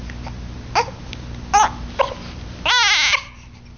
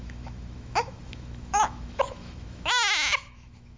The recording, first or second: first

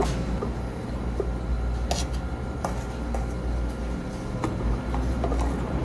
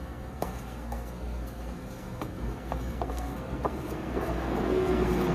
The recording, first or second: first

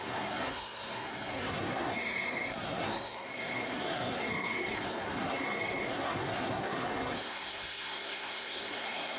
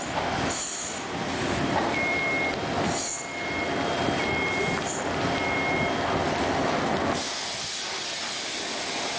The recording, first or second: second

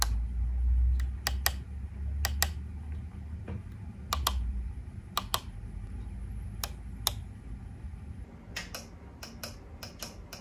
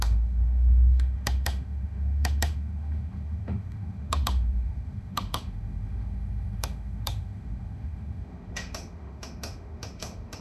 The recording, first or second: first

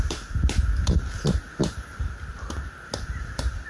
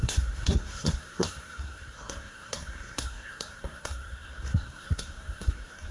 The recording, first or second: first